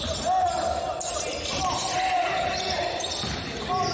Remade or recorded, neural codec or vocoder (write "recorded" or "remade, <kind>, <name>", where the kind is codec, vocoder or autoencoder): recorded